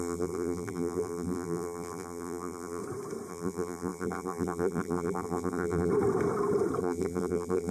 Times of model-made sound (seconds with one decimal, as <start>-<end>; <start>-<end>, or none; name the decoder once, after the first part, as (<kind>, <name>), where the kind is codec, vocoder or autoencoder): 0.0-2.8 (vocoder, BigVGAN v2); 3.3-5.9; 6.8-7.7